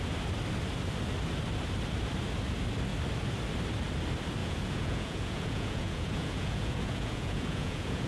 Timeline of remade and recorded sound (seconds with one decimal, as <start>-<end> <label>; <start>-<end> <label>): 0.0-4.4 recorded; 4.4-8.1 remade